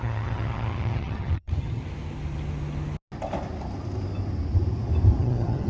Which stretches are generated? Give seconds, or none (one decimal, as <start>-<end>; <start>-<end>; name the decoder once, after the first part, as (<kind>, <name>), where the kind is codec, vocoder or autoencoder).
0.0-1.8 (vocoder, HiFi-GAN); 5.2-5.7